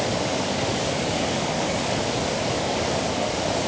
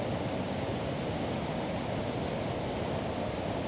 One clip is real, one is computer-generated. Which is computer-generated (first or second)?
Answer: first